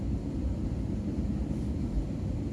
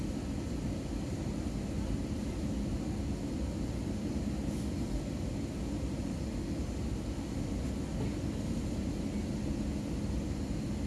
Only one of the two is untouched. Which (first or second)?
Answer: second